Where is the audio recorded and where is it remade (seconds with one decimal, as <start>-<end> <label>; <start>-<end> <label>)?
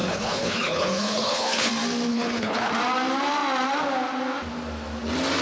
0.0-1.7 remade; 1.7-2.1 recorded; 2.1-2.7 remade; 2.7-5.4 recorded